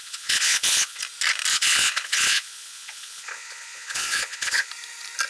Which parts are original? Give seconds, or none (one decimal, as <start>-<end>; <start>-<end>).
1.0-1.5; 4.7-5.3